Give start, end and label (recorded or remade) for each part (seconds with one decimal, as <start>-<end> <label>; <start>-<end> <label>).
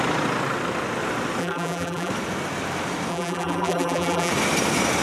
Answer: 0.0-1.4 recorded; 1.4-2.1 remade; 2.1-3.1 recorded; 3.1-4.3 remade; 4.3-5.0 recorded